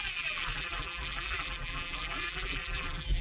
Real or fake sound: fake